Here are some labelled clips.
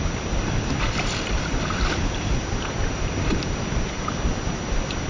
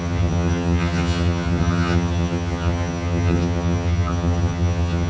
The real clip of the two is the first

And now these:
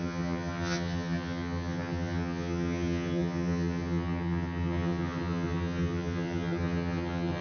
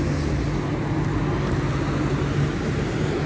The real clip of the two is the second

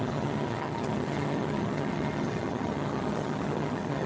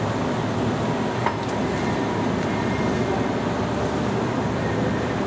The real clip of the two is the second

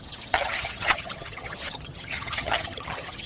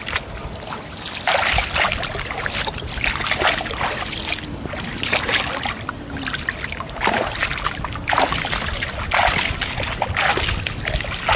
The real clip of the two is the second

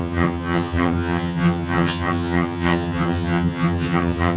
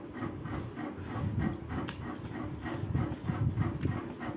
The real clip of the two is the second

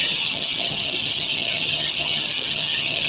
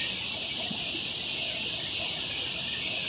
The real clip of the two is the second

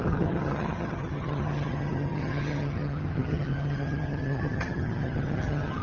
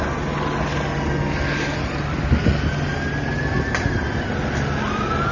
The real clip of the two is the second